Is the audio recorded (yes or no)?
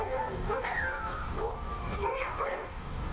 no